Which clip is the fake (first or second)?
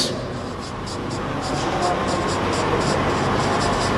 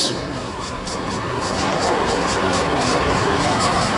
second